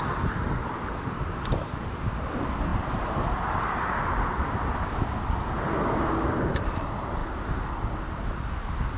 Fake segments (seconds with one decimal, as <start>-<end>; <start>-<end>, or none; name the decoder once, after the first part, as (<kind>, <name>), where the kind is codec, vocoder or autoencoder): none